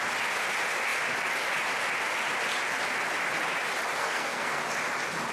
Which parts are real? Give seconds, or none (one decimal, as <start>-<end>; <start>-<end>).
0.0-4.0; 4.6-5.3